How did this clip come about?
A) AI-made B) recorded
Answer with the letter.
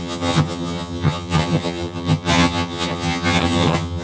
A